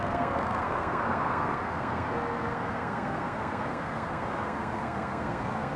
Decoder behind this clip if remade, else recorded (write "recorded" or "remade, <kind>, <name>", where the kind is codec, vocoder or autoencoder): remade, codec, SNAC